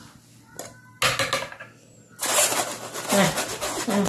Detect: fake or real real